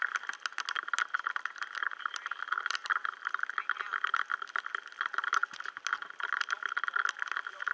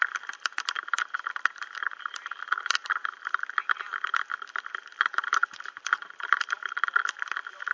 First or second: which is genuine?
first